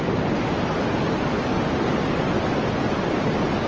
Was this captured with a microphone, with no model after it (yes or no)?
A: yes